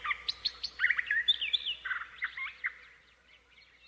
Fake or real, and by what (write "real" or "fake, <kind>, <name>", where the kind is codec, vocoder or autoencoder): real